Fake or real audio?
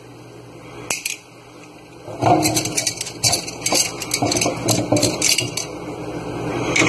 real